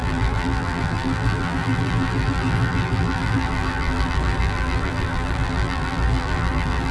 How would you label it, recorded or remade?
remade